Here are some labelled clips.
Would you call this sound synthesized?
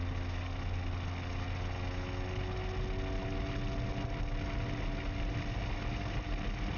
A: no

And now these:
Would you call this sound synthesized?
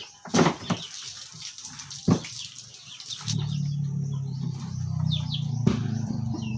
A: no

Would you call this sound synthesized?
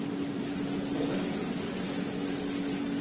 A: no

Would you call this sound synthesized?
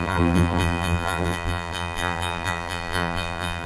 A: yes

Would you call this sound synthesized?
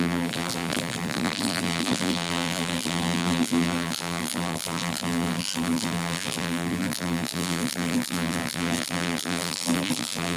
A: yes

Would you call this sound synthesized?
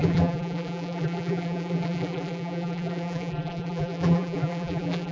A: yes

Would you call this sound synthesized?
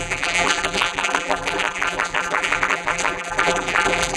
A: yes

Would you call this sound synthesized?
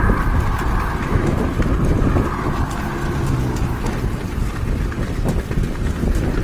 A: no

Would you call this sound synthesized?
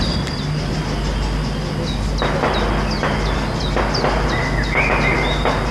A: no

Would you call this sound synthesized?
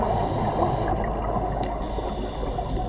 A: no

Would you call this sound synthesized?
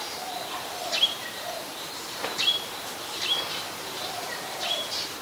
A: yes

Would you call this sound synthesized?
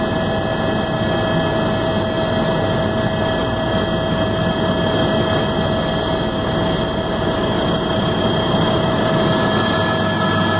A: no